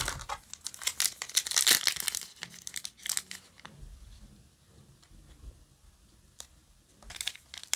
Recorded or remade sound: recorded